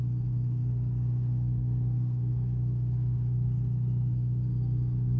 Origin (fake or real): fake